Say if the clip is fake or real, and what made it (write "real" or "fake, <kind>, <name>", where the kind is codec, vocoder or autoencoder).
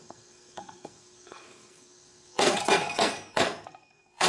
fake, codec, SNAC